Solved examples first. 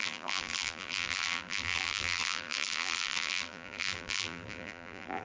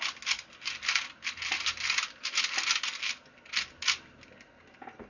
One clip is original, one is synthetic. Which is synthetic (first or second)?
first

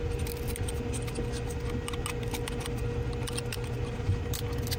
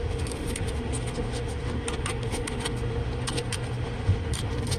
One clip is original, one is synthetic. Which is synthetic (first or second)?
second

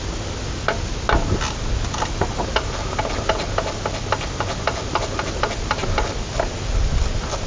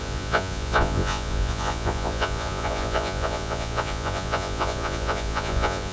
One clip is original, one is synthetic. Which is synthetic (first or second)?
second